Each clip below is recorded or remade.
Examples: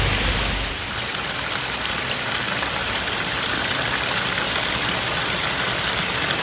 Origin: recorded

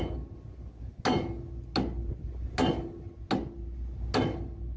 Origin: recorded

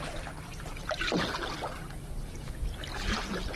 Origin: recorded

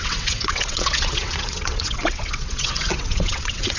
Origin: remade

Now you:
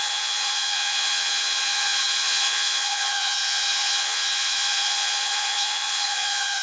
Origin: remade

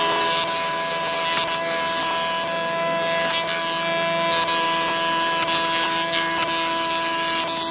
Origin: recorded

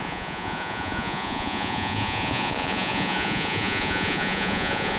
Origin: remade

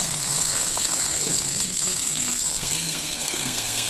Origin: remade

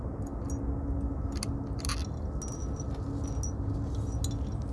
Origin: recorded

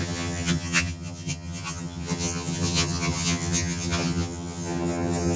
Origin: remade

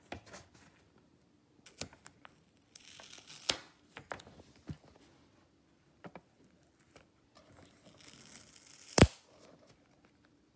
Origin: recorded